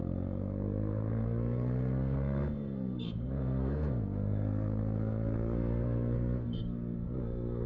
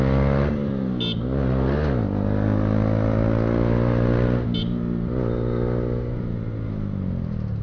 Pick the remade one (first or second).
first